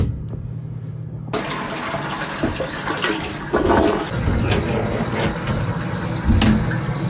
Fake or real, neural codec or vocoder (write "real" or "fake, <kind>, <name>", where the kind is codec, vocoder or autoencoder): real